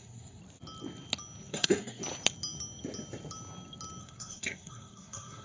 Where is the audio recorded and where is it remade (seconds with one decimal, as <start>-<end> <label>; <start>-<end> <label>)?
0.0-0.4 remade; 0.4-1.5 recorded; 1.5-2.0 remade; 2.0-4.0 recorded; 4.0-5.4 remade